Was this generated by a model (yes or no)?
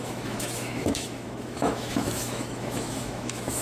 yes